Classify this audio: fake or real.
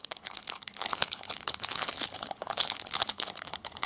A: fake